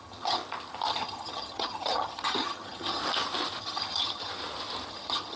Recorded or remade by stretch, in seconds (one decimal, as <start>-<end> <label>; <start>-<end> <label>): 0.0-0.4 remade; 0.4-0.9 recorded; 0.9-3.0 remade; 3.0-3.6 recorded; 3.6-4.3 remade; 4.3-4.9 recorded; 4.9-5.4 remade